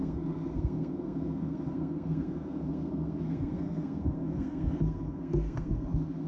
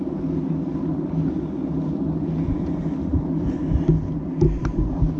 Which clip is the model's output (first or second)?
first